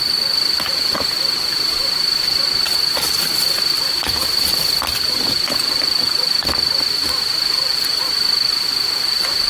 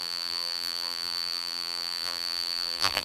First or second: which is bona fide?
first